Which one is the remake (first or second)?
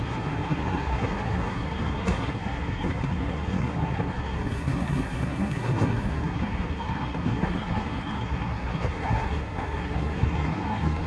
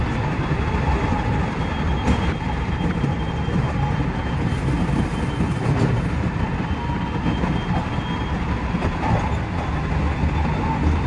first